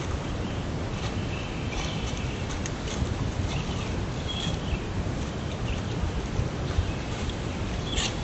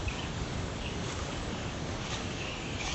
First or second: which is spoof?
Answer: second